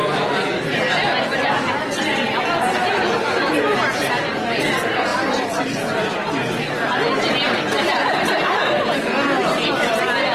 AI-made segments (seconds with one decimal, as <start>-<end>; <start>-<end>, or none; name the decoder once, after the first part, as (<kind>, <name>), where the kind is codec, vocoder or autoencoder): 5.1-6.4 (vocoder, BigVGAN v2)